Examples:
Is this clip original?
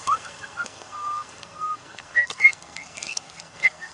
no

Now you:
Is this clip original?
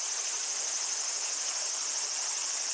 yes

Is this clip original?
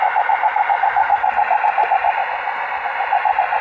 yes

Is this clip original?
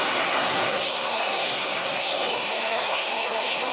no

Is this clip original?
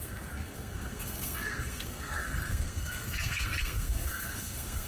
no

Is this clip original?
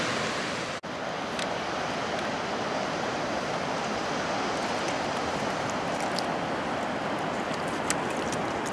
yes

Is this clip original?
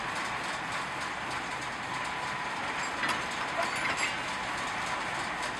yes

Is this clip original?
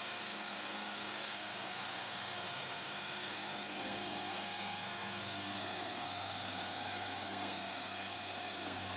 no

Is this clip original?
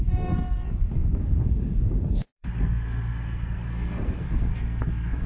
no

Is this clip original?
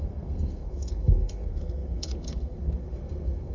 no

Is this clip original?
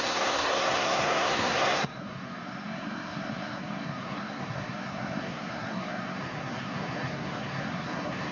no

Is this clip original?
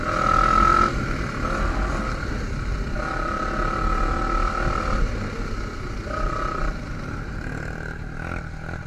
yes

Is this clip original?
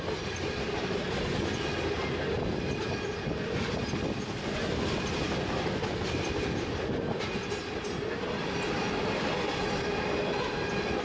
yes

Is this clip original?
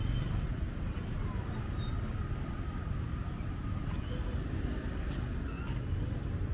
yes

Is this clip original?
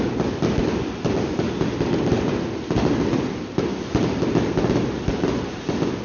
yes